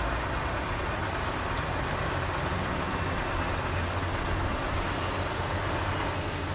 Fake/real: real